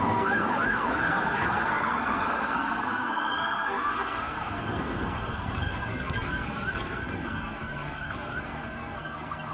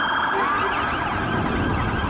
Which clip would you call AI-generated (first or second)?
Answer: first